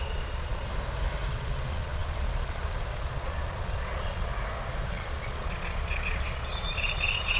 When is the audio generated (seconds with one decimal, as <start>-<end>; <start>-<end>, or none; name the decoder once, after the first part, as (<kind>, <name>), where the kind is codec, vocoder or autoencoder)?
0.0-0.7 (vocoder, Vocos); 1.3-4.3; 4.9-7.4